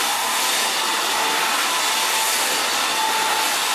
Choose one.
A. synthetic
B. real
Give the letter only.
B